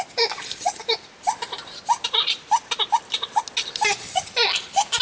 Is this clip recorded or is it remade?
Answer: recorded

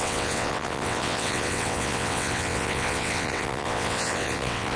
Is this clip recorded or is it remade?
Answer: remade